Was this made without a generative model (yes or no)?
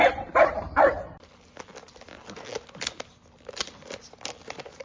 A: yes